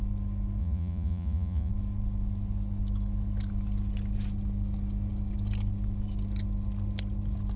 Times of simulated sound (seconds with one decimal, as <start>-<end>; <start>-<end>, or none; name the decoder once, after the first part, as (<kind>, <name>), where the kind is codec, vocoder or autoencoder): 0.6-1.7 (vocoder, Vocos)